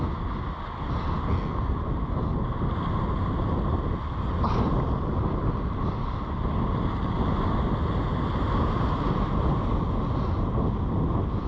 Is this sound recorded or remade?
recorded